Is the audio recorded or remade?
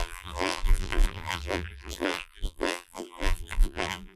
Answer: remade